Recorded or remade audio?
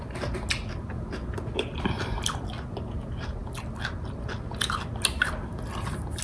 recorded